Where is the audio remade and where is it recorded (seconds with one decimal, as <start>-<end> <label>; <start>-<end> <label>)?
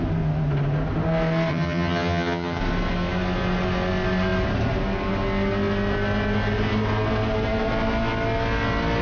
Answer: 0.0-1.5 recorded; 1.5-2.6 remade; 2.6-9.0 recorded